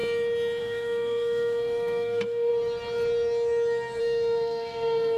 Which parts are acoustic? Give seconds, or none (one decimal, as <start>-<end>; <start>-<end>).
0.0-0.6; 2.5-4.0